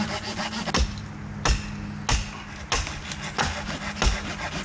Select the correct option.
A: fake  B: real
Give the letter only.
B